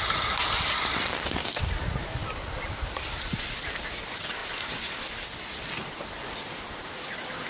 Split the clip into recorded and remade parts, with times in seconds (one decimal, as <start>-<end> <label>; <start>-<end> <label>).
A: 0.0-2.2 recorded; 2.2-3.8 remade; 3.8-4.4 recorded; 4.4-5.0 remade; 5.0-7.5 recorded